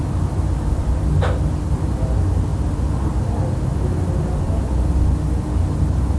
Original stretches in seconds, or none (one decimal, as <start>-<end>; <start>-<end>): 0.0-6.2